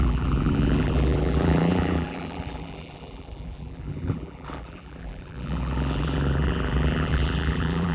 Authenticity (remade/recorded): remade